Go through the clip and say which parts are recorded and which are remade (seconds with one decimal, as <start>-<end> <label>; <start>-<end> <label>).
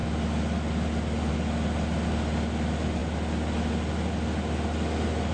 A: 0.0-5.3 recorded